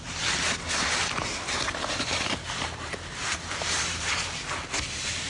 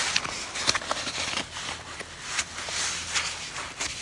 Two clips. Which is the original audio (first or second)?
second